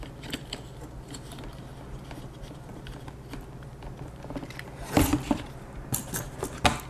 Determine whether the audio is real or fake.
real